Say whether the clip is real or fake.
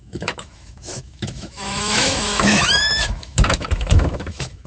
fake